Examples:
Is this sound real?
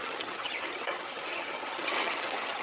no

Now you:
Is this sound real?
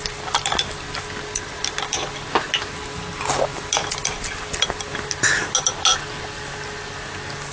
yes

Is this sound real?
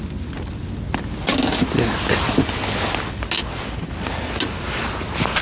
yes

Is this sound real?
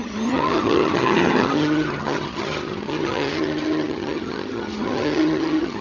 no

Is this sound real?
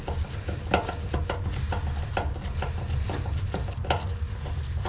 yes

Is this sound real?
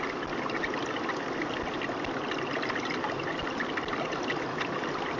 yes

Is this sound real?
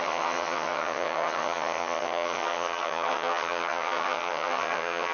no